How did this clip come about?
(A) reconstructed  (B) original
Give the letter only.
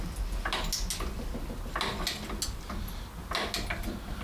B